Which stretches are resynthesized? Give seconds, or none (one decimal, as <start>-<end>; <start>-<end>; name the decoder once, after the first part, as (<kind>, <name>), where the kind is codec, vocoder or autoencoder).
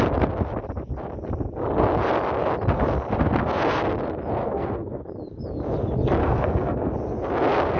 4.4-5.0 (codec, SNAC); 6.2-6.9